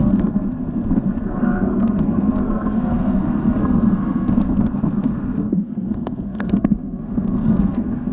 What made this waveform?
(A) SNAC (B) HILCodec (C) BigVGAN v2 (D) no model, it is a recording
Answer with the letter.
A